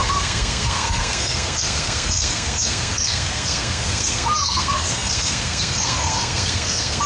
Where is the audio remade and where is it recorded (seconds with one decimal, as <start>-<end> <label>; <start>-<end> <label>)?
0.0-7.1 remade